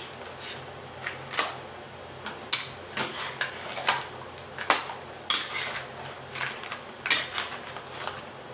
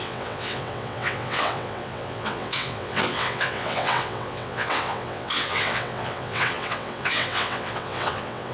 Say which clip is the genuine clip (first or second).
first